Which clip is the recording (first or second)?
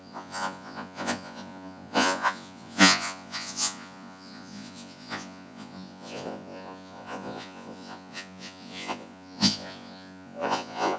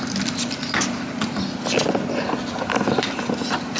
second